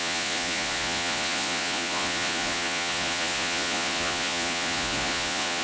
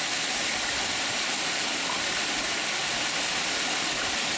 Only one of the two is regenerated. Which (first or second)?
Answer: first